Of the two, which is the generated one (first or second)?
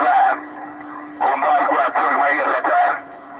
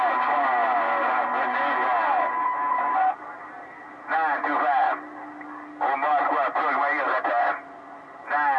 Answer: first